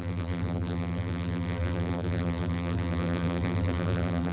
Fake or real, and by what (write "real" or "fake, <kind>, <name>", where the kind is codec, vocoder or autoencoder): fake, vocoder, BigVGAN v2